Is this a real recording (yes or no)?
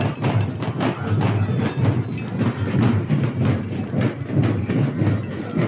yes